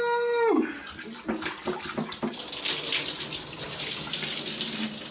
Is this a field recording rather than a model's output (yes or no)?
yes